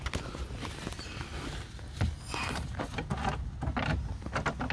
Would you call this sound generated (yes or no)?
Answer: no